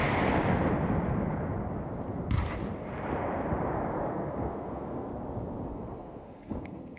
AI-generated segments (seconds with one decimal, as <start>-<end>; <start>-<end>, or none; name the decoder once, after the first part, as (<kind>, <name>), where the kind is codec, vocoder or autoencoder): 4.1-5.1 (codec, SNAC); 5.7-7.0